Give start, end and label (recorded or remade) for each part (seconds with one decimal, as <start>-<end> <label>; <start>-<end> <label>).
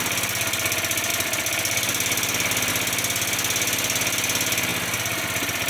0.0-5.7 recorded